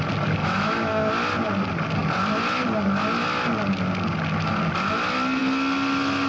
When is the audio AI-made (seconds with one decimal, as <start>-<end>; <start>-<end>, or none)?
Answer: 0.4-1.1